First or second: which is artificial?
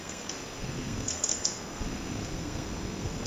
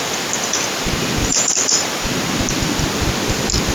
first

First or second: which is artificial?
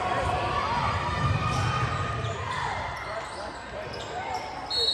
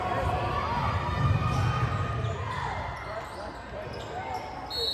first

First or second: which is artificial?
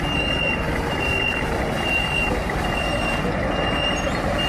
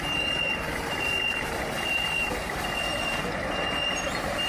second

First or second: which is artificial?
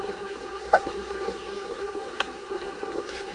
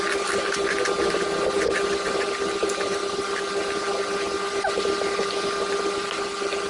first